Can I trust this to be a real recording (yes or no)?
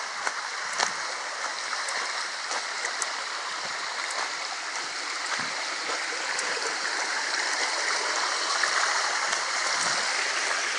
yes